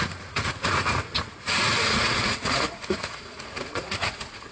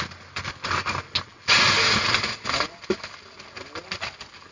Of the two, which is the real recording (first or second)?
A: second